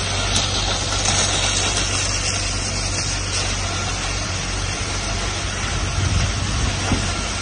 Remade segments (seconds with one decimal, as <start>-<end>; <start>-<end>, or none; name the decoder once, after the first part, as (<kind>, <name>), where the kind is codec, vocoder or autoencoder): 3.9-5.1 (vocoder, BigVGAN v2)